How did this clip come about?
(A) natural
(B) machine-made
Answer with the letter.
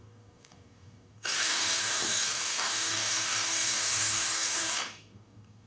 B